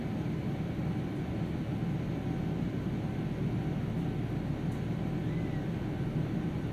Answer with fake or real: real